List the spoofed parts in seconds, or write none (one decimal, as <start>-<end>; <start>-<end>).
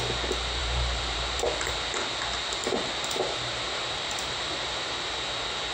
0.6-1.7; 2.6-4.9